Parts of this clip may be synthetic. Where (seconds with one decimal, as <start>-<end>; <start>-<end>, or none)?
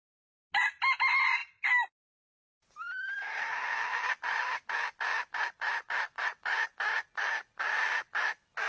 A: none